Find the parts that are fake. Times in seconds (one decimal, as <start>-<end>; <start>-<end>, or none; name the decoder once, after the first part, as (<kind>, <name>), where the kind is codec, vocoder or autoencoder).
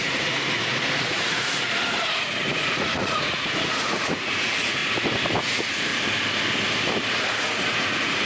0.0-4.8 (vocoder, Vocos); 5.4-5.9; 7.1-8.3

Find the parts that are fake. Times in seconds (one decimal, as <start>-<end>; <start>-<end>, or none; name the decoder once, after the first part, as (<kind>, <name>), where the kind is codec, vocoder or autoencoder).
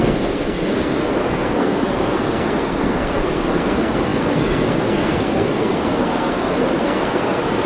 0.0-7.7 (codec, SNAC)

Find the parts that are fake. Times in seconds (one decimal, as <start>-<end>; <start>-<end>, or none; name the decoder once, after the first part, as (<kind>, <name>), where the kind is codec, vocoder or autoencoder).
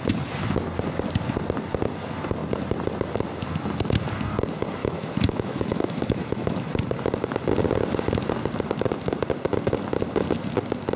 4.8-6.7 (autoencoder, DAC-VAE)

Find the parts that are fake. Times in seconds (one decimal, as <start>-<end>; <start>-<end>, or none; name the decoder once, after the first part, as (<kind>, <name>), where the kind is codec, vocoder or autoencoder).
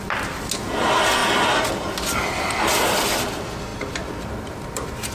none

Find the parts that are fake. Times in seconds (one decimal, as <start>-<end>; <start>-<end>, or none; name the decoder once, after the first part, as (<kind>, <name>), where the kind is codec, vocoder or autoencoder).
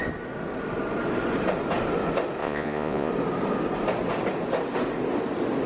2.4-3.1 (vocoder, Vocos)